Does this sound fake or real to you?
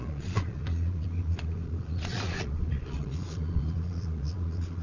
fake